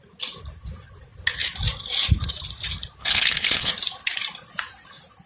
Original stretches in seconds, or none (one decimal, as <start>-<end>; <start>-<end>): 0.0-3.0; 3.7-5.3